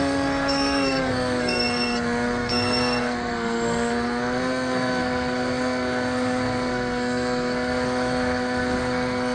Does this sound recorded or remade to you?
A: remade